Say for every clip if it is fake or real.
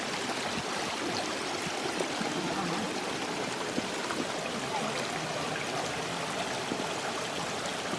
real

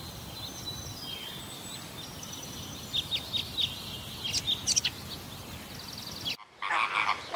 real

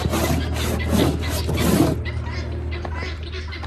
real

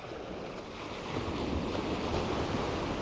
real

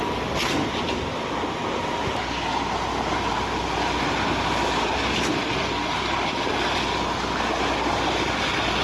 real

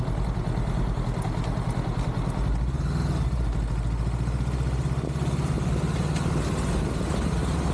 real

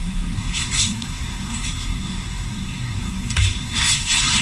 fake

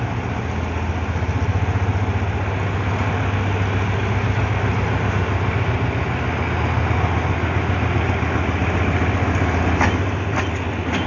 real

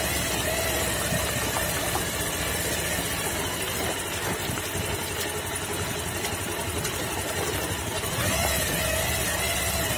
real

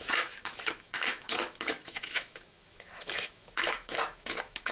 fake